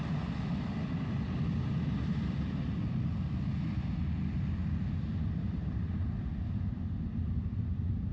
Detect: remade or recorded recorded